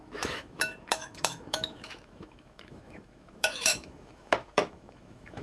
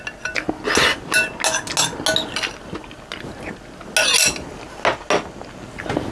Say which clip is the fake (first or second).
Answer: first